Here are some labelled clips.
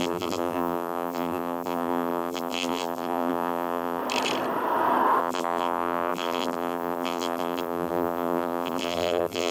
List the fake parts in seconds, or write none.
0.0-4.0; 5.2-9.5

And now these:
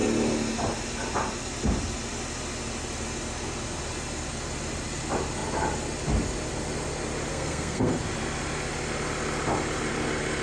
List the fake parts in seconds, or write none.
7.3-8.0

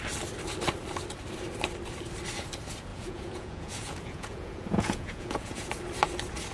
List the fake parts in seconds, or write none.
2.9-5.7

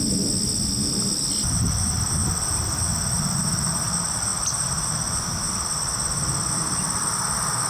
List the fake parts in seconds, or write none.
none